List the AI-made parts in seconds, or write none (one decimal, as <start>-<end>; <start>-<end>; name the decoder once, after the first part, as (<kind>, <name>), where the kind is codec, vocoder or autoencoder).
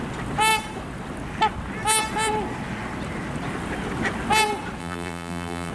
4.8-5.7 (vocoder, BigVGAN v2)